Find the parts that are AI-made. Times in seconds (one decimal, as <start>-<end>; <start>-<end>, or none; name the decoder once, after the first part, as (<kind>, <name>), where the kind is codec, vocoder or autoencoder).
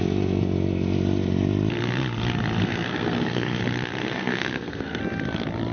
2.6-3.6 (codec, SNAC); 4.0-5.0